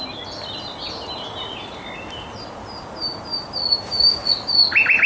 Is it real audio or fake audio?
real